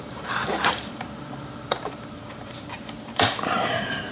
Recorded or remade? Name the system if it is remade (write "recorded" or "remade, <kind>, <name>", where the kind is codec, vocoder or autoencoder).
remade, vocoder, BigVGAN v2